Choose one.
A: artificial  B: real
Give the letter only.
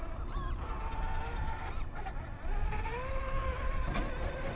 B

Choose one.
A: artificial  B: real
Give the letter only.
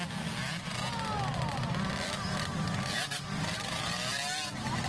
B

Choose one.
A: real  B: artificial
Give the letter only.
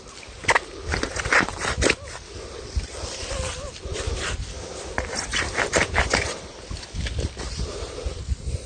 A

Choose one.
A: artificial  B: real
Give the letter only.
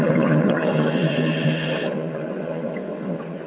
A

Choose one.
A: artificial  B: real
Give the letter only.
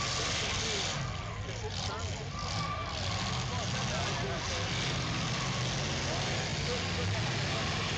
B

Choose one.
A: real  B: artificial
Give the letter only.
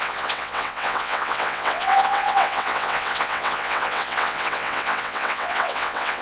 B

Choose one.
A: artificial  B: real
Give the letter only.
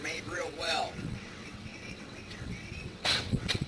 A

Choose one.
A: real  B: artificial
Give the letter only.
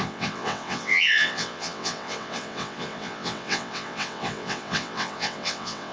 B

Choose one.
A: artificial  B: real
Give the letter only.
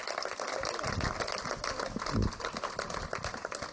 B